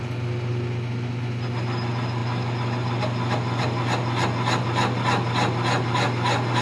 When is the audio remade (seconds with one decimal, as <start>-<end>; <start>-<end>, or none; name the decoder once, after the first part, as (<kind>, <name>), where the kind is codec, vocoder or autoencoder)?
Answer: none

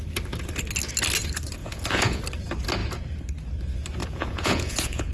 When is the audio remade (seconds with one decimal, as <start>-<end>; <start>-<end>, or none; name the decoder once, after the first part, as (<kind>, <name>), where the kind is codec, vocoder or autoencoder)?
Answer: 1.6-2.2 (vocoder, Vocos); 4.0-5.1

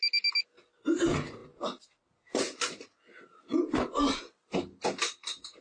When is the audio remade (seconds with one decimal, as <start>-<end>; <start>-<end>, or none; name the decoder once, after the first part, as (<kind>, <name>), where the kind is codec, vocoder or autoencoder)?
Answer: none